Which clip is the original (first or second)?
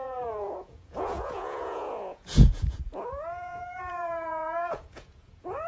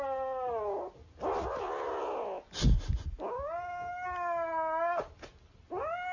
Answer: second